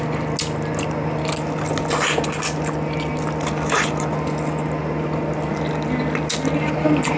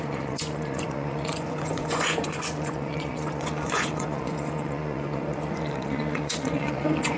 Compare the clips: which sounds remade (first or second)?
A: second